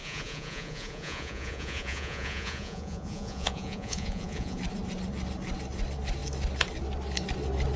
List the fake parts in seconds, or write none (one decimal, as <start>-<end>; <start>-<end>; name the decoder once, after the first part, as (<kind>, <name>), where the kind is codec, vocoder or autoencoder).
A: 0.0-4.6 (vocoder, Vocos)